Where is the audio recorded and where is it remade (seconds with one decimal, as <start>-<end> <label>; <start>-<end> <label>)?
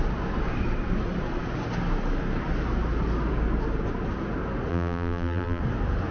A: 0.0-4.7 recorded; 4.7-5.6 remade; 5.6-6.1 recorded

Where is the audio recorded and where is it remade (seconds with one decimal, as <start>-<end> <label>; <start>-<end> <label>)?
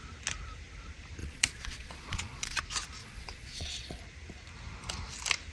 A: 0.0-1.2 recorded; 1.2-2.6 remade; 2.6-3.0 recorded; 3.0-4.0 remade; 4.0-5.5 recorded